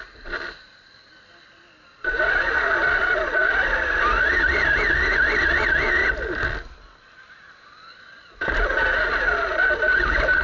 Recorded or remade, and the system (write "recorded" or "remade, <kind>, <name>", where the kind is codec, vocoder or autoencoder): recorded